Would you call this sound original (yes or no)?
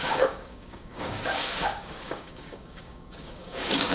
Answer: no